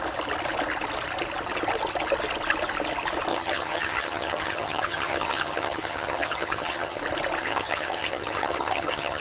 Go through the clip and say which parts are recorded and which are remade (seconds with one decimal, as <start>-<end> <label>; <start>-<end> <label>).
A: 0.0-3.3 recorded; 3.3-7.0 remade; 7.0-7.4 recorded; 7.4-9.2 remade